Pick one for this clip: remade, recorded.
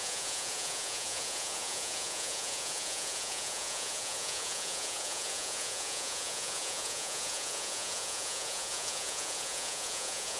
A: remade